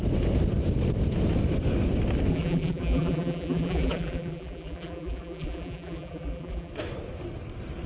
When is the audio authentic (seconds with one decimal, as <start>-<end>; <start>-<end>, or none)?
0.0-2.3; 6.7-7.9

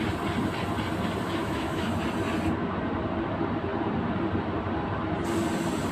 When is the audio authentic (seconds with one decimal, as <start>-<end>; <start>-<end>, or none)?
0.0-1.4; 1.9-5.9

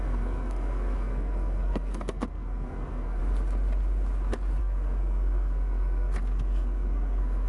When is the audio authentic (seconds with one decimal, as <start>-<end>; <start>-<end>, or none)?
3.2-4.6

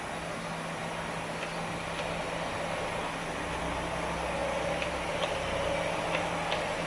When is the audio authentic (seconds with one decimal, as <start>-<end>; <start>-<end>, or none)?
0.0-6.9

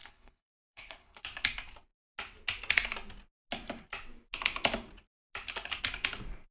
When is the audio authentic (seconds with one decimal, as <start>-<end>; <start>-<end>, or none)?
1.2-6.5

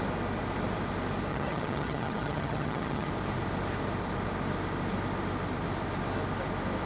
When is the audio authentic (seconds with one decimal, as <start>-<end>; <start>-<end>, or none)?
0.0-1.3; 3.1-6.9

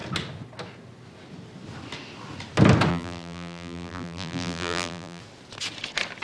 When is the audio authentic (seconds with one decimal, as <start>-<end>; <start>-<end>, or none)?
0.0-2.9; 5.2-6.2